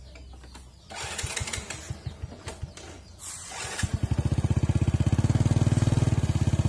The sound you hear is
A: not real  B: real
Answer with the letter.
B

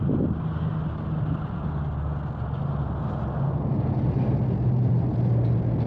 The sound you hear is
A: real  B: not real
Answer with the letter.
A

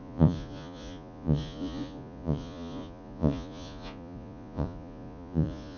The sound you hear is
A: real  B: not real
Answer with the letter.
B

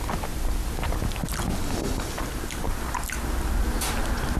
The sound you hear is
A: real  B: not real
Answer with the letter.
A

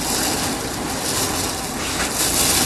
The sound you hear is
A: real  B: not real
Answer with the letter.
A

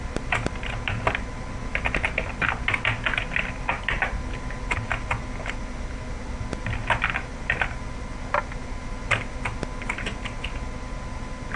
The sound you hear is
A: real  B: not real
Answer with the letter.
A